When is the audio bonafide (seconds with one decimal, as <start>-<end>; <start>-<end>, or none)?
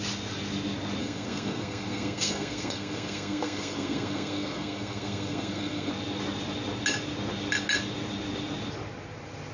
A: 0.0-1.0; 5.9-9.5